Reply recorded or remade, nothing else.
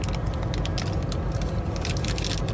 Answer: recorded